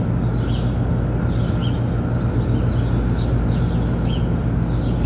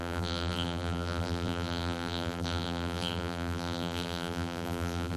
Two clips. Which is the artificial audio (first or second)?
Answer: second